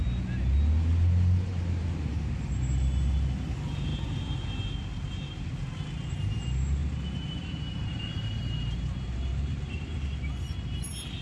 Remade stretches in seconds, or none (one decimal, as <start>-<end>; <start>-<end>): 6.8-9.9